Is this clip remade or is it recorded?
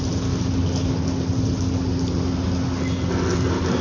recorded